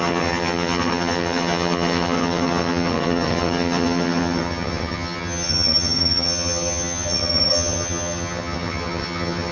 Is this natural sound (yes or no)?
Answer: no